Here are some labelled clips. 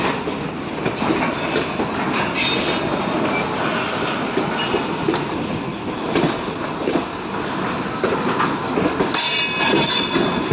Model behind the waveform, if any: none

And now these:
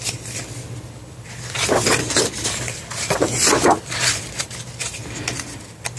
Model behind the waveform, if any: none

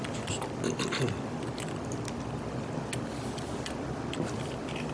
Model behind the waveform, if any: none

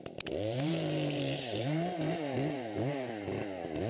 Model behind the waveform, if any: vocoder, BigVGAN v2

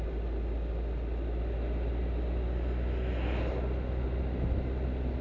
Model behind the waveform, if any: none